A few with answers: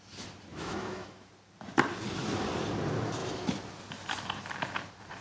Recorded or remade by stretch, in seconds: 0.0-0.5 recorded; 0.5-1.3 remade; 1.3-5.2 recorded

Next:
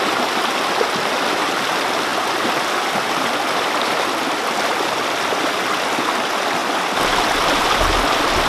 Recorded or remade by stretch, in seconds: 0.0-8.5 recorded